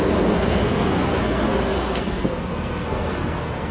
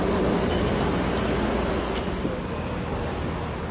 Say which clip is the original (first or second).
second